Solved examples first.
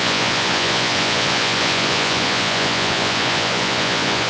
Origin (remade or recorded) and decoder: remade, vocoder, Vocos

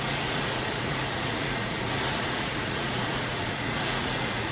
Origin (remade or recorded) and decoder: remade, vocoder, Vocos